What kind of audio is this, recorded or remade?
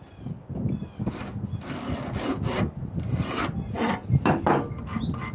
recorded